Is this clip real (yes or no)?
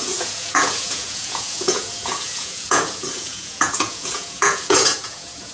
no